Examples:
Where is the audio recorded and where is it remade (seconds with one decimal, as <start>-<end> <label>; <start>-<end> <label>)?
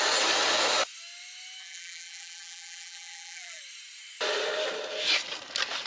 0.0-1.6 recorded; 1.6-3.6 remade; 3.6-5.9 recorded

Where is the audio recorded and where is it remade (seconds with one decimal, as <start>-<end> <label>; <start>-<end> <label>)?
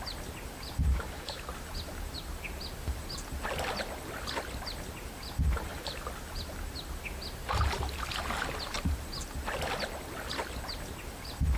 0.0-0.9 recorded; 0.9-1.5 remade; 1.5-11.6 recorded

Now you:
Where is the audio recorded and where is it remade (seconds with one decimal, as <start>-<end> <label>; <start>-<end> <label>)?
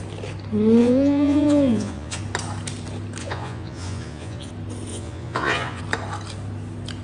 0.0-0.8 recorded; 0.8-2.2 remade; 2.2-3.2 recorded; 3.2-4.5 remade; 4.5-4.9 recorded; 4.9-5.8 remade; 5.8-7.0 recorded